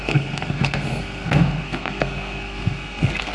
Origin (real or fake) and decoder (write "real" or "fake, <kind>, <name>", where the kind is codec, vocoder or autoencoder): fake, codec, SNAC